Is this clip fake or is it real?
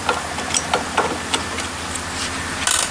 real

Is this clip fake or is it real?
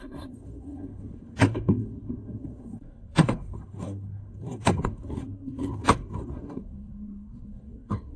fake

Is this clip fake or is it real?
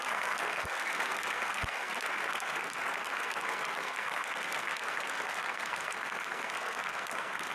fake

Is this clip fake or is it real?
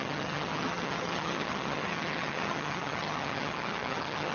fake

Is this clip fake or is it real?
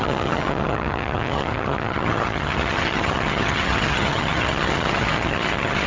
fake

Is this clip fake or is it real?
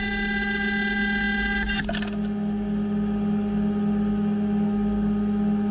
real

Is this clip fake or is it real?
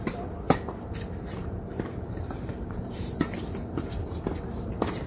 fake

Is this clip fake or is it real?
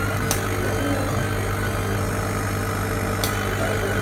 real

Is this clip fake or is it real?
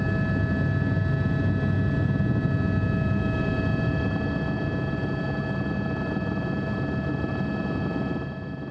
real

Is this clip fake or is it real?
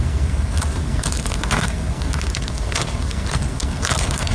fake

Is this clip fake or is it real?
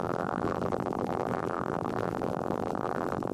fake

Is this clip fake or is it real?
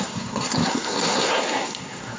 fake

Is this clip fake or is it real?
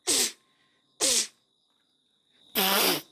real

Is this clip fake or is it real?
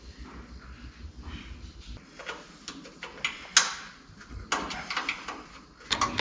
real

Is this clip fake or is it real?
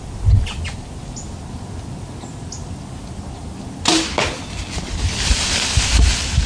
real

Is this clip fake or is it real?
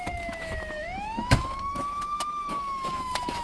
fake